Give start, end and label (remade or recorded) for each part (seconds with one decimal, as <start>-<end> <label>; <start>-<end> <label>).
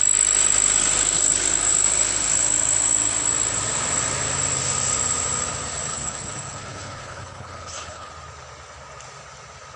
0.0-5.9 recorded; 5.9-8.1 remade; 8.1-9.8 recorded